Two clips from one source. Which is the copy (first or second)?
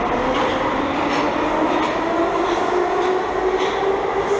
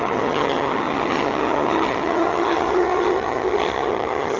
second